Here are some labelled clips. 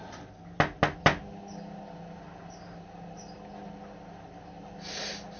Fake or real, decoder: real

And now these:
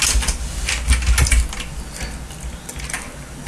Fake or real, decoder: real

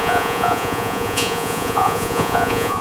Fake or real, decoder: fake, vocoder, Vocos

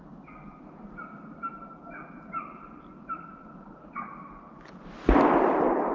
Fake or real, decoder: real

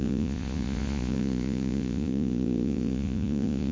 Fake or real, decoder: fake, vocoder, Vocos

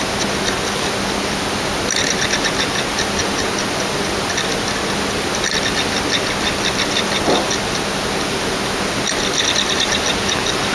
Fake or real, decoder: real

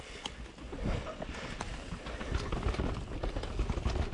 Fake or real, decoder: real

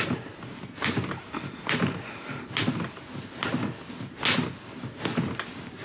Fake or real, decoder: real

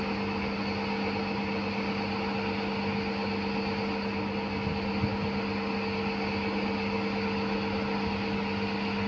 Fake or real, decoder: real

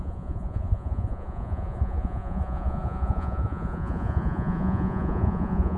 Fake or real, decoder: fake, vocoder, Vocos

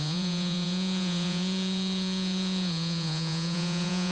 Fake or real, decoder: fake, vocoder, Vocos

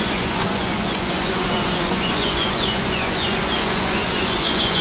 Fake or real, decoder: fake, vocoder, Vocos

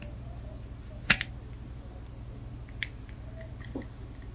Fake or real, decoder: real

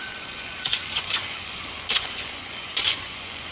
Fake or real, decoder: fake, vocoder, Vocos